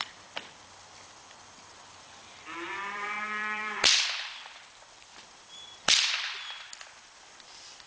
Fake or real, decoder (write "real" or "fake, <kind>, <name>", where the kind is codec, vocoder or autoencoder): fake, vocoder, BigVGAN v2